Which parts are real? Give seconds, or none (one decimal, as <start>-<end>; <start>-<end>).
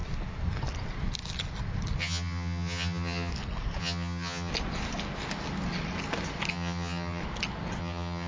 0.0-2.0; 3.3-3.8; 4.5-6.5; 7.2-7.8